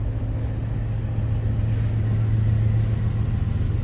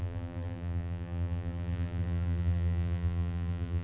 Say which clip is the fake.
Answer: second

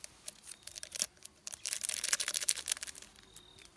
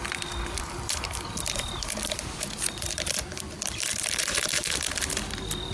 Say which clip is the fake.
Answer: second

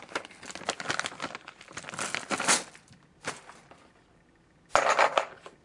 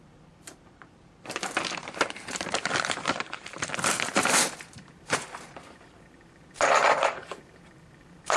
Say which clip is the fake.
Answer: second